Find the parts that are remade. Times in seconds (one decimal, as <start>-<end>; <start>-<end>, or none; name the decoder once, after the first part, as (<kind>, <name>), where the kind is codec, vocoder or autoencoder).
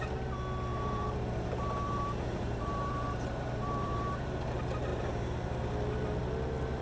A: 0.7-4.4 (vocoder, BigVGAN v2); 4.9-5.7